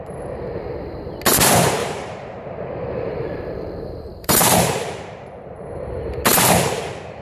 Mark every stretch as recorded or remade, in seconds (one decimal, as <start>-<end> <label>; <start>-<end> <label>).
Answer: 0.0-1.8 recorded; 1.8-6.1 remade; 6.1-7.2 recorded